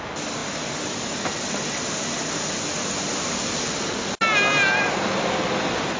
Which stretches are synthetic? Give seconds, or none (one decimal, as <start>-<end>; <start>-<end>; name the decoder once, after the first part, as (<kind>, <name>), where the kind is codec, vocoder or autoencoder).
none